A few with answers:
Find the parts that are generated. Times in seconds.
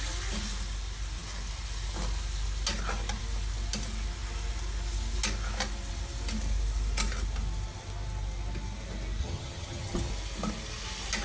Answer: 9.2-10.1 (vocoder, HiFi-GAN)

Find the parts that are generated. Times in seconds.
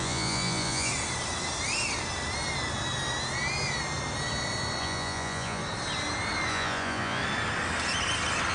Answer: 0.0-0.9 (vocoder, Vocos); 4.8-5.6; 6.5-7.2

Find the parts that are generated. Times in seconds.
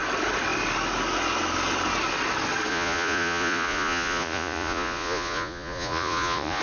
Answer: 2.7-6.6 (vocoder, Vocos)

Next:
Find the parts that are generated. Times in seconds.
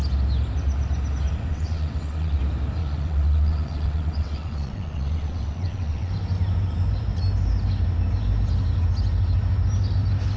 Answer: 1.5-2.4 (vocoder, WaveNeXt); 2.8-6.1